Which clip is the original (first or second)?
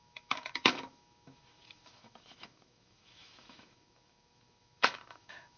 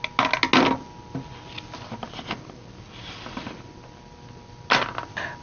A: second